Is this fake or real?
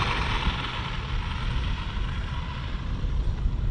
real